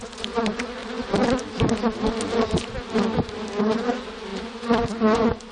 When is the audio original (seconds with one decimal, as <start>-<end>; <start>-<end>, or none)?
0.8-3.6